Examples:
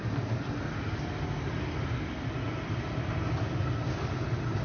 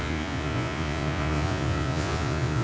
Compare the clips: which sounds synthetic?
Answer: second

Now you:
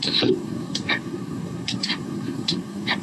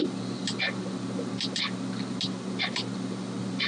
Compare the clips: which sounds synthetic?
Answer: first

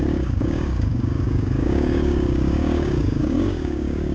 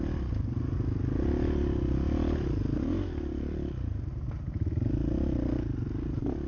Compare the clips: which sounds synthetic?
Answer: first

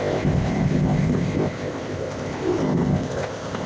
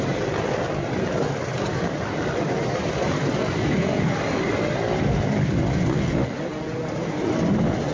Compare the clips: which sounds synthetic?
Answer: first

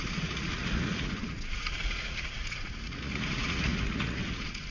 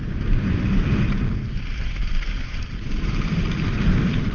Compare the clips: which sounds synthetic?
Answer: first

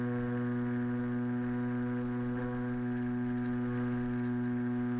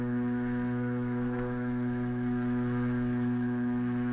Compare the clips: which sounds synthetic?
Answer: second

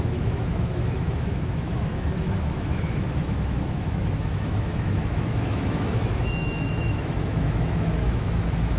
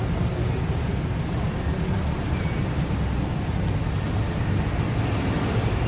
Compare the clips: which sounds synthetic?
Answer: first